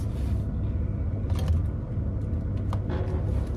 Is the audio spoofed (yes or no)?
no